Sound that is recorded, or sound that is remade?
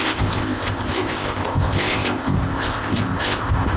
remade